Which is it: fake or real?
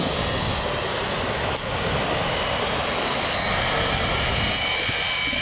real